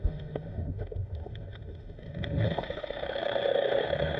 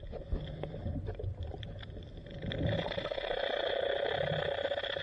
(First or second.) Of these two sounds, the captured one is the second